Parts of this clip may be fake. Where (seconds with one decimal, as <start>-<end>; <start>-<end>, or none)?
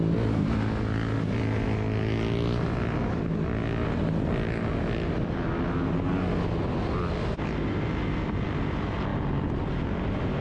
none